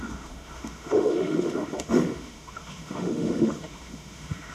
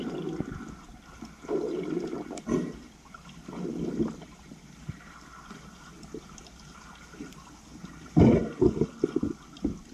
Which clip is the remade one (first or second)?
first